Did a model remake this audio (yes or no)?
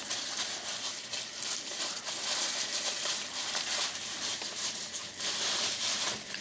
yes